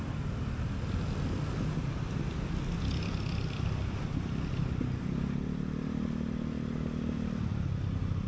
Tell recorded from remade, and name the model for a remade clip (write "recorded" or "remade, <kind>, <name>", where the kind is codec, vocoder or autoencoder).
recorded